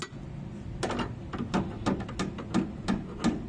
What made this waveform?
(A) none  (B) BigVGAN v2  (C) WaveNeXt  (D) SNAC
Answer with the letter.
A